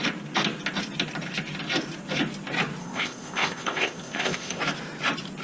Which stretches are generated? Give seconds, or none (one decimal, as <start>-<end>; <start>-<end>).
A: 2.8-4.6